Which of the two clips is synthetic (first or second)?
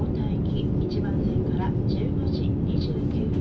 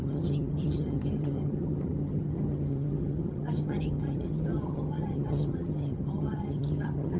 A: second